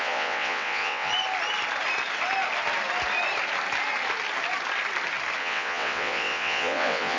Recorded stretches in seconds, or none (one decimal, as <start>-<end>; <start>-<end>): 1.1-5.4